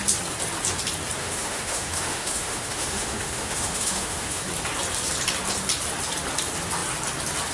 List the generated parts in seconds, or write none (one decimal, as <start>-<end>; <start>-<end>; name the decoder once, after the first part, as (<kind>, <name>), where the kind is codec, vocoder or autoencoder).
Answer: 1.2-4.4 (autoencoder, DAC-VAE)